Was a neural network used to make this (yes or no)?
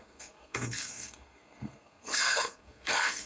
yes